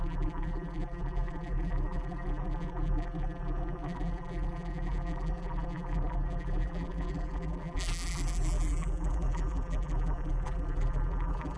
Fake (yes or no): yes